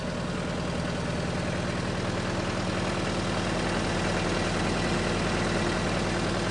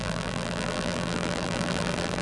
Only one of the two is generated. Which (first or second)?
second